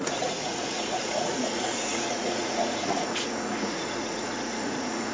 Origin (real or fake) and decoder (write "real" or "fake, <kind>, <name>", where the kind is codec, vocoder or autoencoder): fake, vocoder, Vocos